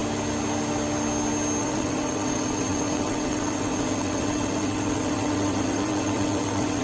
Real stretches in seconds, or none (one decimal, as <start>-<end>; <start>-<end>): 0.0-1.6